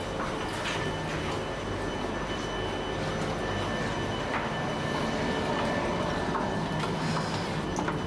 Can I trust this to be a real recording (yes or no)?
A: yes